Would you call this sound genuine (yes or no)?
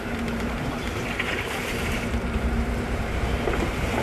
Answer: no